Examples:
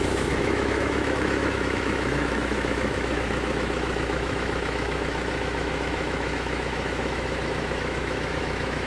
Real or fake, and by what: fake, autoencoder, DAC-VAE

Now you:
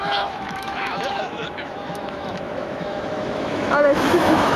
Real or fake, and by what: fake, autoencoder, DAC-VAE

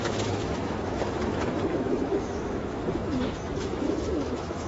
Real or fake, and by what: fake, autoencoder, DAC-VAE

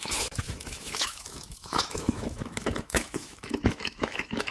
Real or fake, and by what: fake, autoencoder, DAC-VAE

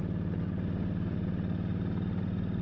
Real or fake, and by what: real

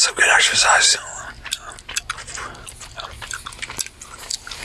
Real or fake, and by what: real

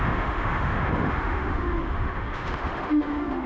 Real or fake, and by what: fake, autoencoder, DAC-VAE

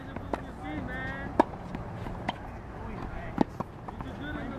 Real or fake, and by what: real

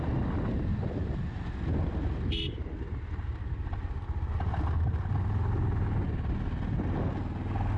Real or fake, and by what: real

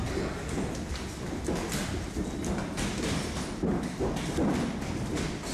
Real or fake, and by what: real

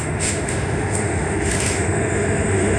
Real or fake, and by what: fake, autoencoder, DAC-VAE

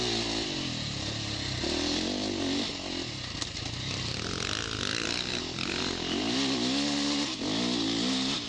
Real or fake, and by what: real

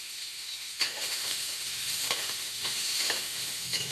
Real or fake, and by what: fake, autoencoder, DAC-VAE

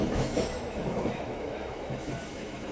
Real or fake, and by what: fake, autoencoder, DAC-VAE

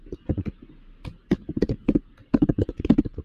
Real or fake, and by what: real